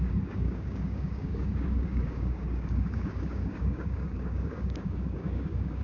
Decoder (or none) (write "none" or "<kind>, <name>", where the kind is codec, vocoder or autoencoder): codec, DAC